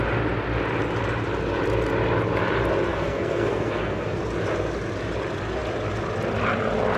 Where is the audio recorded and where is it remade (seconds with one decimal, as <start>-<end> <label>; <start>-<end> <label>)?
0.0-2.9 recorded; 2.9-4.2 remade; 4.2-7.0 recorded